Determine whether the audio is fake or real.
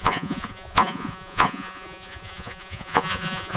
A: fake